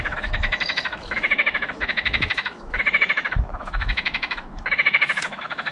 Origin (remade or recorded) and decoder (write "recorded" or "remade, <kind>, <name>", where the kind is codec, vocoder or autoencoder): remade, autoencoder, DAC-VAE